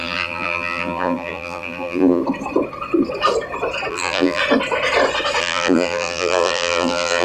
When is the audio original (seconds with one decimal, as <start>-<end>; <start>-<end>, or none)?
2.2-3.9; 4.4-5.4